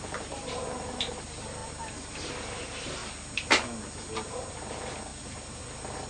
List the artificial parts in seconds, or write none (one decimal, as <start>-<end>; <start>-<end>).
0.0-3.0; 4.5-6.1